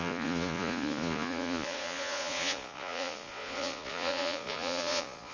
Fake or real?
fake